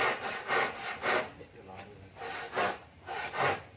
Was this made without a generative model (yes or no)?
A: yes